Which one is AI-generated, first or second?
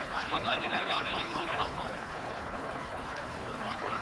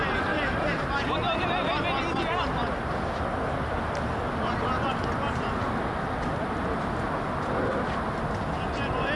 first